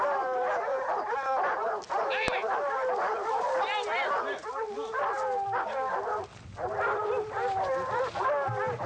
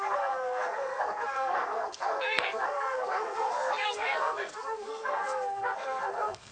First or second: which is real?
first